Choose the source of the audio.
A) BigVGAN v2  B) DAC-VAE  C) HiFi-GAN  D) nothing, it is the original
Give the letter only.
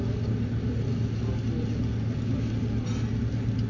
D